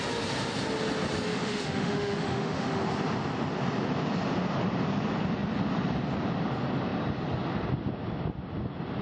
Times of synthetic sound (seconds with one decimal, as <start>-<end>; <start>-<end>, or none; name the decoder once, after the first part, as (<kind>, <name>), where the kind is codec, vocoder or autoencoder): 1.3-2.8 (autoencoder, DAC-VAE)